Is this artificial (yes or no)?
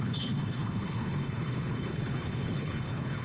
yes